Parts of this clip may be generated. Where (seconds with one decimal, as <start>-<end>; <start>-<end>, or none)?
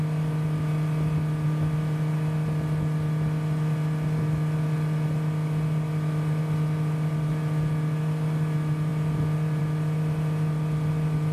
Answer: none